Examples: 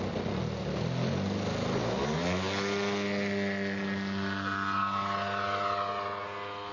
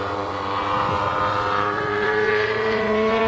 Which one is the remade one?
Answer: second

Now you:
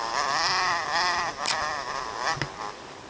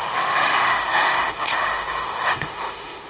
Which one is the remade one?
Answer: second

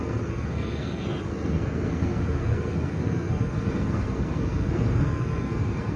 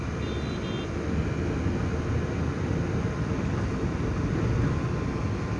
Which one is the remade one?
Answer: first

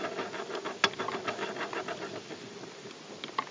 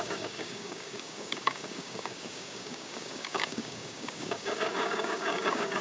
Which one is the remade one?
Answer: second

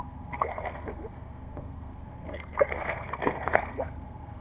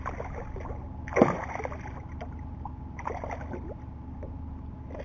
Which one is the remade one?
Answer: first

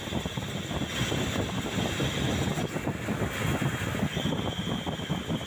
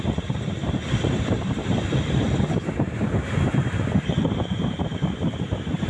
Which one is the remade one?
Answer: second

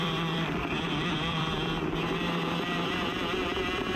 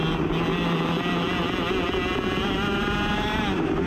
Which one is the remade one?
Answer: first